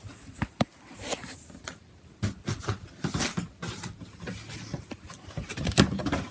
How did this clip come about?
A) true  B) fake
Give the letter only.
A